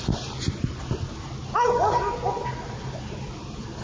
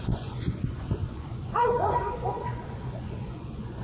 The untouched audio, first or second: first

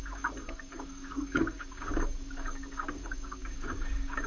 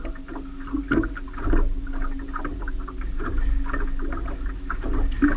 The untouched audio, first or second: second